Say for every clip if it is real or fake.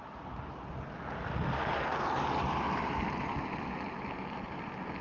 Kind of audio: real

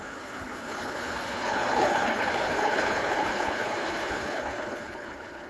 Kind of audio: fake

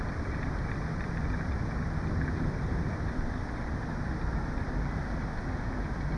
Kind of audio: real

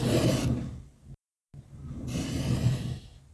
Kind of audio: real